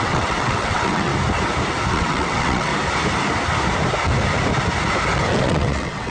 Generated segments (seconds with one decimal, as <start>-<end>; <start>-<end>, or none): 0.0-1.1; 1.9-2.7; 5.4-6.1